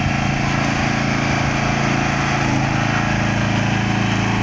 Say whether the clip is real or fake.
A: real